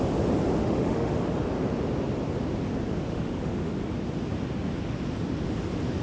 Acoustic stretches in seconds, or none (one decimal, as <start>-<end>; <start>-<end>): 0.0-0.6; 1.1-3.1; 3.7-6.0